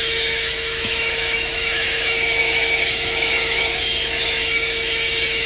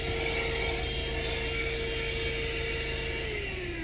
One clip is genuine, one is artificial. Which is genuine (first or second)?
second